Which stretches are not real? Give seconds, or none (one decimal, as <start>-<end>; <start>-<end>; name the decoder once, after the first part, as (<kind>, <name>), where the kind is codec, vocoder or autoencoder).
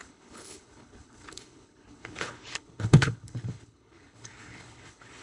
0.0-5.2 (codec, HILCodec)